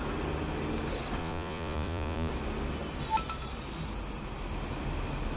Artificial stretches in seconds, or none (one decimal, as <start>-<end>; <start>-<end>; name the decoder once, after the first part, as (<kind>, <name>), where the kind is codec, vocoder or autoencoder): 1.2-2.3 (vocoder, Vocos)